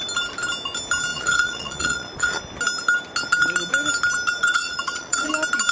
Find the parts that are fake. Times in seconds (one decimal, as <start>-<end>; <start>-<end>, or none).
1.1-2.4; 4.4-5.3